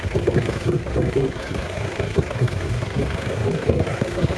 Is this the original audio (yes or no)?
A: no